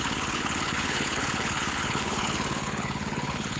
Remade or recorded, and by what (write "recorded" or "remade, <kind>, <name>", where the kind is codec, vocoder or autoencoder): remade, codec, HILCodec